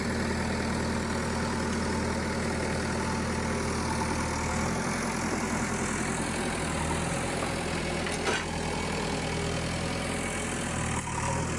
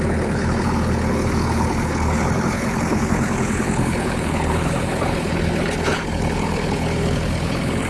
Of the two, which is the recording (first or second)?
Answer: first